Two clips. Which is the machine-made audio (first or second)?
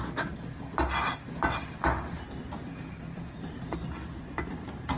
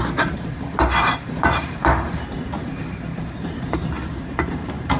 second